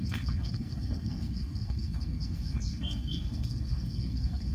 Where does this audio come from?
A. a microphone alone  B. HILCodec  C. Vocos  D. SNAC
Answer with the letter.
D